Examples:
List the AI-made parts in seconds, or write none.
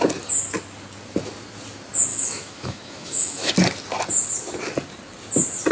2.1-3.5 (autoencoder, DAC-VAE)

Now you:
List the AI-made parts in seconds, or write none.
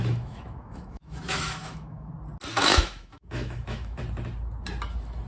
0.0-2.1 (autoencoder, DAC-VAE); 2.6-4.0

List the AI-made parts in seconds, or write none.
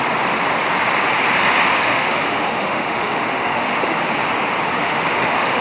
1.7-4.0 (autoencoder, DAC-VAE); 4.8-5.6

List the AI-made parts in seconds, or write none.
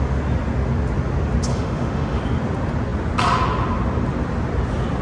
1.5-2.2 (autoencoder, DAC-VAE)